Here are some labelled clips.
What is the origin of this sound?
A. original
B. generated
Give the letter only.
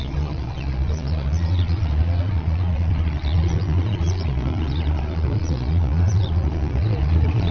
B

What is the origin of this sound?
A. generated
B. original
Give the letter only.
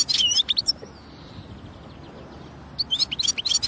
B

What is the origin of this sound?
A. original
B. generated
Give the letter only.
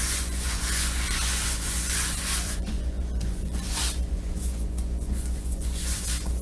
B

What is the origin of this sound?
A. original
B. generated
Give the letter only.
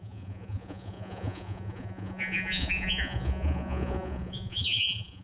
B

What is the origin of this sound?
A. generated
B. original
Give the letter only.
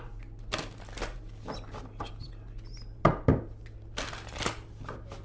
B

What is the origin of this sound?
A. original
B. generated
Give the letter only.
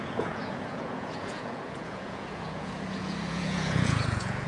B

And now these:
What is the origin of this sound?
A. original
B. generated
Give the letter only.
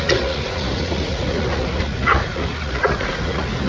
B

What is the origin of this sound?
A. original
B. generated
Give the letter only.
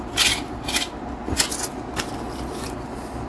A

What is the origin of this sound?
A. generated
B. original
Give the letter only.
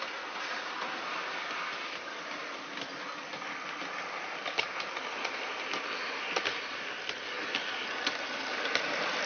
B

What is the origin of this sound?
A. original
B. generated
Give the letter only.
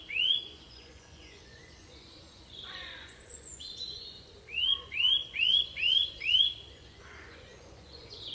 B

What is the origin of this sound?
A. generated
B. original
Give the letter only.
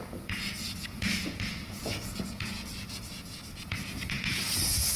A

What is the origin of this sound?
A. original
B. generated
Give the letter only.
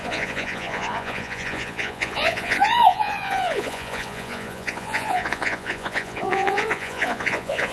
B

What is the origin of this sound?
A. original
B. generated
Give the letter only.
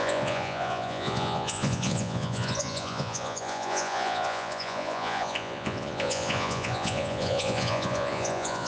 B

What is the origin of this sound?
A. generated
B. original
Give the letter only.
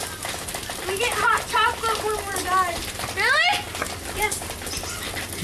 B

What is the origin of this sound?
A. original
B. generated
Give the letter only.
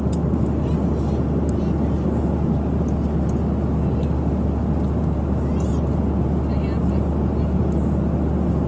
A